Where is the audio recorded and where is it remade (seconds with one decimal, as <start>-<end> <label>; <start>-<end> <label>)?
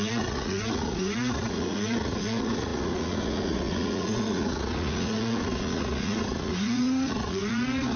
0.0-8.0 remade